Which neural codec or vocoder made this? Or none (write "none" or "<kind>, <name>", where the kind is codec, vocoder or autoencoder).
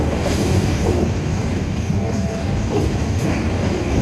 codec, DAC